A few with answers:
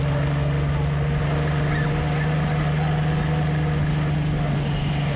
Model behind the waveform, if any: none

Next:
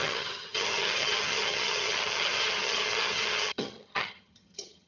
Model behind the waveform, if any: vocoder, HiFi-GAN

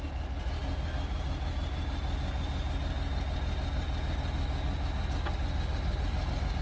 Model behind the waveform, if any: none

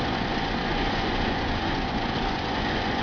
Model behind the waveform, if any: vocoder, Vocos